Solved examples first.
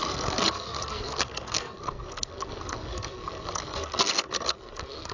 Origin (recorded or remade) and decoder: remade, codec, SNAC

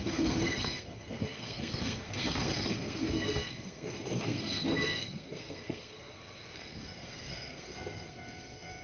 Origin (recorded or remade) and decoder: remade, codec, SNAC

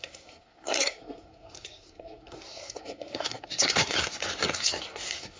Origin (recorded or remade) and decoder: remade, codec, SNAC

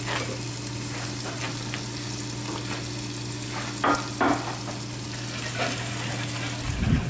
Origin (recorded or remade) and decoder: recorded